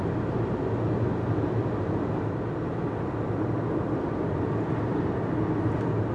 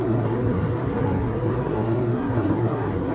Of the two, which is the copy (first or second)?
second